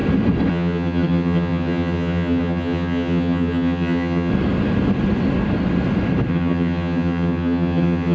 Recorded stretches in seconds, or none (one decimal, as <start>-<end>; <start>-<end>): 0.0-0.5; 4.3-6.3